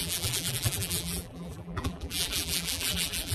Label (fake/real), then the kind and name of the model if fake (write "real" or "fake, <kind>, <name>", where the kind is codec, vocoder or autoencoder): fake, vocoder, BigVGAN v2